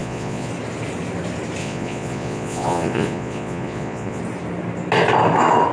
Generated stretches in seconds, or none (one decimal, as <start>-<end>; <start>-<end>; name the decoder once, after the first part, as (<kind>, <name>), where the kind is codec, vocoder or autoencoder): 0.0-0.5 (vocoder, Vocos); 1.6-4.2